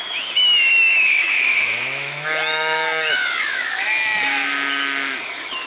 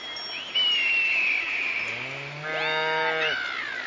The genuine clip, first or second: second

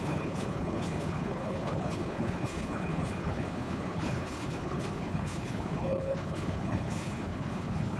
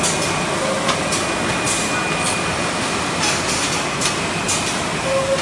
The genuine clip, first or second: second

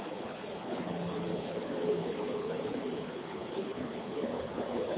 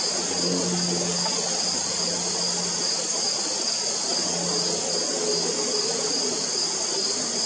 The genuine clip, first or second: second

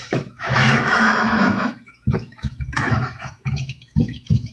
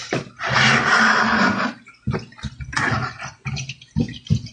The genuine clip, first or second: second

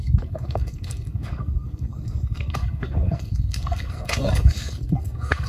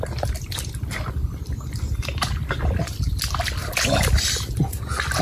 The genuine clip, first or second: second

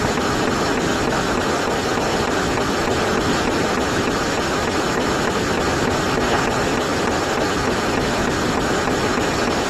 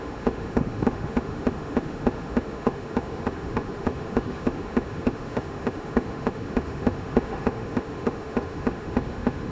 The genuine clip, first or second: first